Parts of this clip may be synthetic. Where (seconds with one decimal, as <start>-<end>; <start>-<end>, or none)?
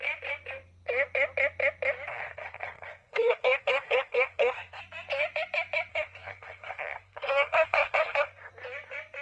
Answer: 2.1-4.8; 5.9-8.5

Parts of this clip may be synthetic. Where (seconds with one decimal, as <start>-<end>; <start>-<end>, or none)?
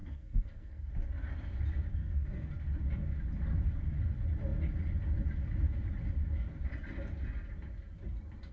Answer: 0.0-0.9; 2.0-2.5